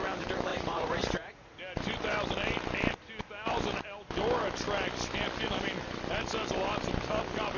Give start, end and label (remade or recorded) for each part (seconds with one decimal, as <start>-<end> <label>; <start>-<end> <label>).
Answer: 0.0-0.5 recorded; 0.5-1.6 remade; 1.6-7.6 recorded

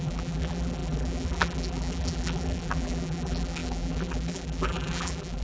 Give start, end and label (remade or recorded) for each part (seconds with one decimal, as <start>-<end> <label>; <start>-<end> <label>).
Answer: 0.0-5.4 remade

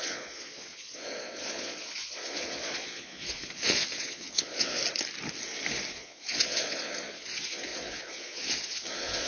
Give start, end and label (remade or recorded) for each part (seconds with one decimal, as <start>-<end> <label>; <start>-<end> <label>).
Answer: 0.0-4.8 remade; 4.8-5.9 recorded; 5.9-9.3 remade

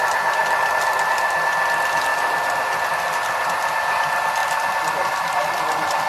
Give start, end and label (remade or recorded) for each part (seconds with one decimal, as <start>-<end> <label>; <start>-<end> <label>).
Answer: 0.0-6.1 recorded